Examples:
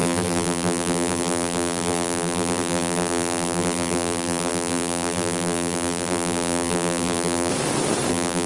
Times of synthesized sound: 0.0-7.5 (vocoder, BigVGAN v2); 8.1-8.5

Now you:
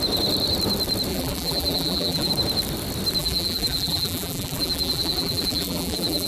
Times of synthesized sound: 1.1-2.3 (vocoder, BigVGAN v2); 3.2-6.3